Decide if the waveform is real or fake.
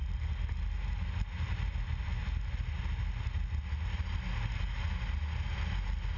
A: real